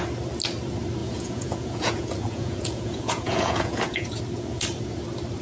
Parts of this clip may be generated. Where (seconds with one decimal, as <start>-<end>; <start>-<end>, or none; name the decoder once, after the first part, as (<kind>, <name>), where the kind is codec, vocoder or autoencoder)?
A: 1.0-4.2 (vocoder, Vocos)

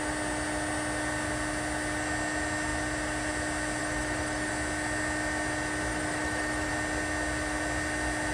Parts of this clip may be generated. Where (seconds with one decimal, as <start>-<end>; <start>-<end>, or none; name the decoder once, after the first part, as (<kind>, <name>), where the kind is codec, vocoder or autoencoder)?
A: 3.8-4.5 (autoencoder, DAC-VAE); 5.9-6.7

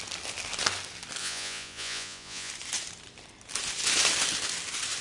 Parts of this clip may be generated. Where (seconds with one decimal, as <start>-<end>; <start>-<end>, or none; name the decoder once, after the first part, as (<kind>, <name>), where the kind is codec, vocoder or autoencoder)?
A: 1.2-2.5 (vocoder, Vocos)

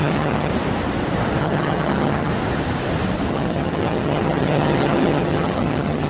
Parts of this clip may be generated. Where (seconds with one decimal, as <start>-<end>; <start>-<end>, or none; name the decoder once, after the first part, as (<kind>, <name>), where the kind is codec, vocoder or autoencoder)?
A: 0.0-0.5 (vocoder, HiFi-GAN); 1.4-2.3; 3.3-6.1

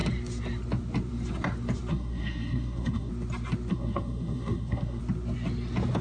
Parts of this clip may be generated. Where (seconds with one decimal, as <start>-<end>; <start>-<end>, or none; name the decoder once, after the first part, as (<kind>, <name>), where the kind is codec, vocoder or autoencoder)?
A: 1.9-3.1 (codec, SNAC); 3.7-5.0

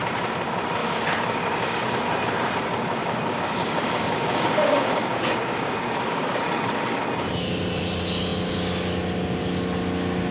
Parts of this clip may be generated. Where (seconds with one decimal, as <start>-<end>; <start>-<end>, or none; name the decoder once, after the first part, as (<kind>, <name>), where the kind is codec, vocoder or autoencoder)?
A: 0.8-1.8 (codec, DAC); 3.0-7.0

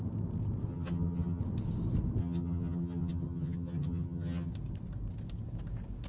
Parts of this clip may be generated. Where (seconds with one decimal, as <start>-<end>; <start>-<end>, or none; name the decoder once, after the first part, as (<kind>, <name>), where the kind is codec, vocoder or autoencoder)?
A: 0.7-1.4 (vocoder, HiFi-GAN); 2.2-4.5

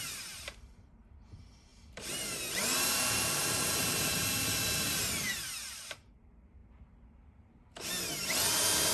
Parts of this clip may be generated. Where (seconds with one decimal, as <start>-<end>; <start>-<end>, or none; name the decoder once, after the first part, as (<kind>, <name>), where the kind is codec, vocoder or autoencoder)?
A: 0.0-8.9 (vocoder, BigVGAN v2)